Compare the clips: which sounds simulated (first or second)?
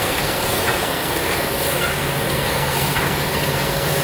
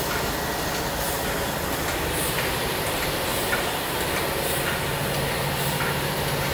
first